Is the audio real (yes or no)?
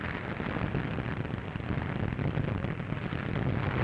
no